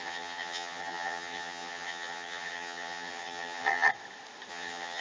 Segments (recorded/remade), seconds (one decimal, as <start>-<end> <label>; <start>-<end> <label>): 0.0-3.9 remade; 3.9-4.5 recorded; 4.5-5.0 remade